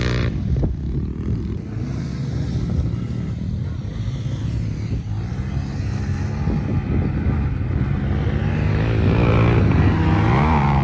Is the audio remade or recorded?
recorded